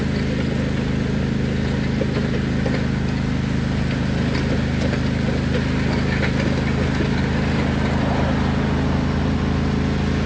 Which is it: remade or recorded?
recorded